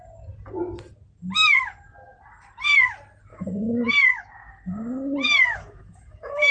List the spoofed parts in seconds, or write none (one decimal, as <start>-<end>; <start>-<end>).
3.3-3.9; 5.6-6.5